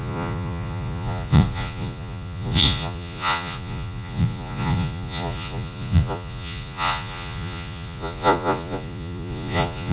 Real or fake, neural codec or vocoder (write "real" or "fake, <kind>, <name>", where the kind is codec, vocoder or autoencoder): fake, vocoder, Vocos